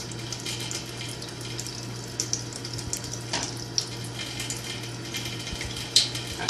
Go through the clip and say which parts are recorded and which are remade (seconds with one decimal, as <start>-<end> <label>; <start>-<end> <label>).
0.0-1.7 remade; 1.7-5.4 recorded; 5.4-6.5 remade